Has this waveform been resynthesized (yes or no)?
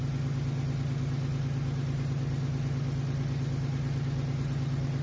no